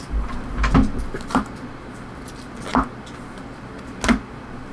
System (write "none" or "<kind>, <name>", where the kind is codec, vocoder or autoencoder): none